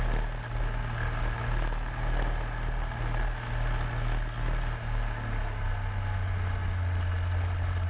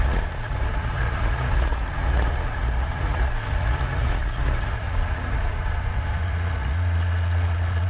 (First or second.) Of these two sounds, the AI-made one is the second